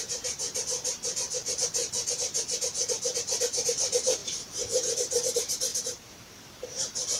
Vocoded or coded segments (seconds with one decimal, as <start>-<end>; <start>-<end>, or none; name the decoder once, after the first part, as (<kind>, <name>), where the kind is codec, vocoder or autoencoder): 0.0-1.8 (vocoder, BigVGAN v2); 3.4-7.2